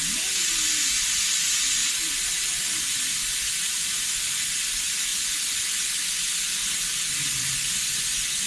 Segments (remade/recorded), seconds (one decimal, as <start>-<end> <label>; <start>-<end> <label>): 0.0-6.6 recorded; 6.6-8.5 remade